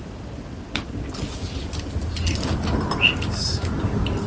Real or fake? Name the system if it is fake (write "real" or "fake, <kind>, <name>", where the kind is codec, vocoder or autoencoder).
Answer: real